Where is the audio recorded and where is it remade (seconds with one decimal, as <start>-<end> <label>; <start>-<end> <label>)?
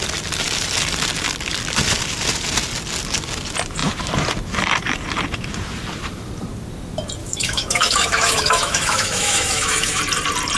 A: 0.0-7.2 recorded; 7.2-10.0 remade; 10.0-10.6 recorded